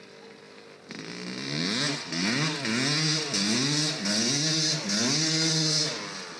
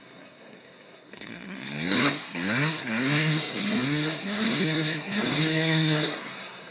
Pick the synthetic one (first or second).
second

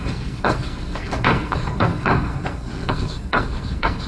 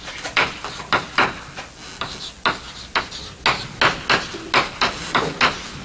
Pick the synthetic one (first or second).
first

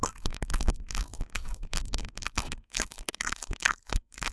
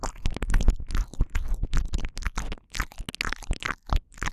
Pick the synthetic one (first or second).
first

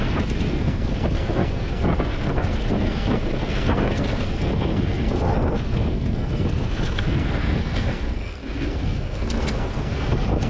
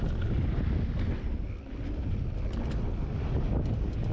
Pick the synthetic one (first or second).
first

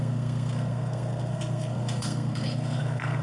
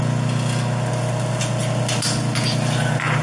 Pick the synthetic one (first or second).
first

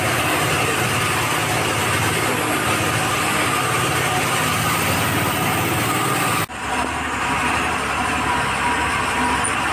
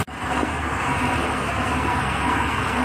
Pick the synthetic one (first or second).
second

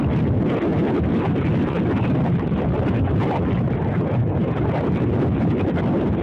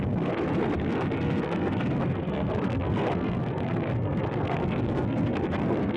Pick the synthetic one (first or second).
second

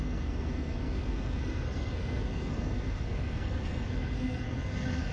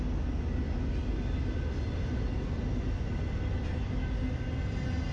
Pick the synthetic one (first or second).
first